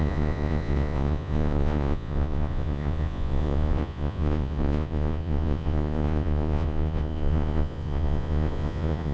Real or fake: fake